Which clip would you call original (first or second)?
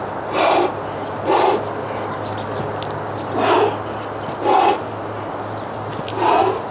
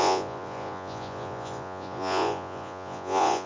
first